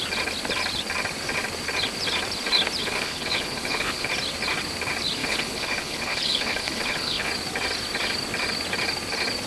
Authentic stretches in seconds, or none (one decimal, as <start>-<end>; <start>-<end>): 0.0-2.8; 4.1-5.2; 7.3-9.5